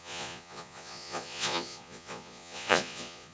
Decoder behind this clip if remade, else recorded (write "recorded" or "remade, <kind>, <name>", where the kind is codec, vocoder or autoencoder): remade, vocoder, Vocos